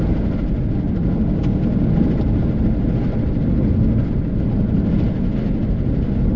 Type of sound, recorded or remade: recorded